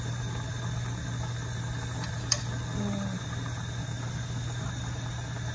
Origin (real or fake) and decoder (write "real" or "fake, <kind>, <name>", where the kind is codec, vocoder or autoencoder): real